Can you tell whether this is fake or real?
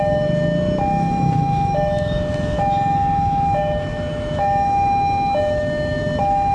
fake